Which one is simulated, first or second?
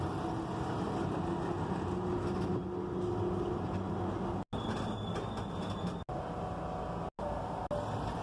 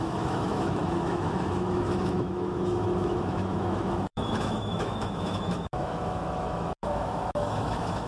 second